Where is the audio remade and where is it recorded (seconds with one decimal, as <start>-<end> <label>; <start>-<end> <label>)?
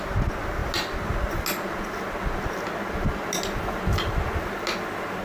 0.0-5.2 recorded